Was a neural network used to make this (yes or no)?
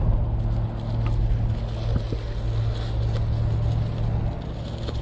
no